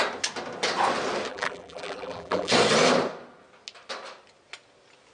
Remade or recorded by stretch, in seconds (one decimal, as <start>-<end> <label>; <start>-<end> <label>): 0.0-1.3 recorded; 1.3-2.5 remade; 2.5-5.1 recorded

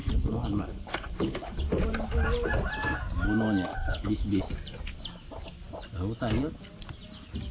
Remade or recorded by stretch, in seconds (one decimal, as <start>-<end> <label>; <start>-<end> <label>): 0.0-1.7 remade; 1.7-3.7 recorded; 3.7-4.4 remade; 4.4-7.5 recorded

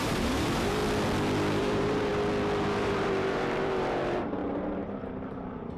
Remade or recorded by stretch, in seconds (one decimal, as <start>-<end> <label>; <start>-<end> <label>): 0.0-0.8 remade; 0.8-1.5 recorded; 1.5-2.1 remade; 2.1-2.7 recorded; 2.7-4.4 remade; 4.4-5.1 recorded; 5.1-5.8 remade

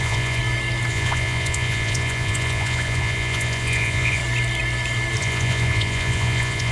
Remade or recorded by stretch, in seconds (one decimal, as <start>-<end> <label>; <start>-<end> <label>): 0.0-0.4 remade; 0.4-0.9 recorded; 0.9-4.2 remade; 4.2-5.2 recorded; 5.2-6.7 remade

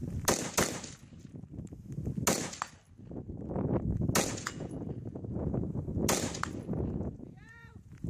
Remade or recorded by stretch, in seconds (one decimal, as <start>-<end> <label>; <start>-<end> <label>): 0.0-4.3 recorded; 4.3-5.9 remade; 5.9-6.7 recorded; 6.7-8.1 remade

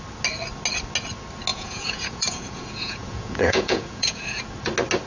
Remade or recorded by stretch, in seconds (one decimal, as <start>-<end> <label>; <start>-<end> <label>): 0.0-1.5 recorded; 1.5-4.4 remade; 4.4-5.1 recorded

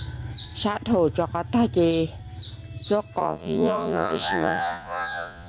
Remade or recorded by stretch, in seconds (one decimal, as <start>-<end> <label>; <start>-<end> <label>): 0.0-3.2 recorded; 3.2-5.5 remade